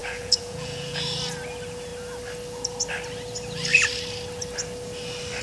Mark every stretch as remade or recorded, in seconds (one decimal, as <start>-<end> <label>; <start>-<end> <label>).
0.0-1.2 remade; 1.2-5.4 recorded